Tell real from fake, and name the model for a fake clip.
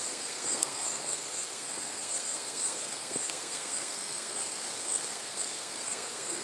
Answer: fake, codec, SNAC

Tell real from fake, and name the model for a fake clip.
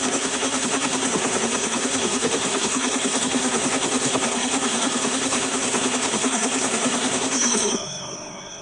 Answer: fake, codec, SNAC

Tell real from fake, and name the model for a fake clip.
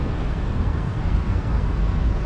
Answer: fake, codec, SNAC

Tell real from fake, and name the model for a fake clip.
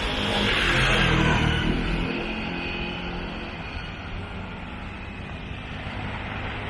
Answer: real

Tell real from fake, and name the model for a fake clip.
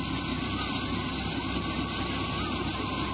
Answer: real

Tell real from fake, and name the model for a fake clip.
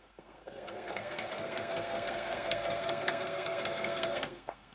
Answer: fake, codec, SNAC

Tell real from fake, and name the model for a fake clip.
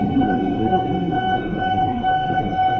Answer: fake, codec, SNAC